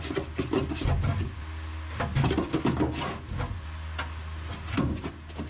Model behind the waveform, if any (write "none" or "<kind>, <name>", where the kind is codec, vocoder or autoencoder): none